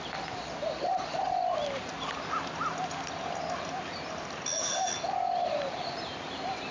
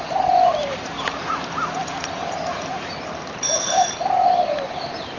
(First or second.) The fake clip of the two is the second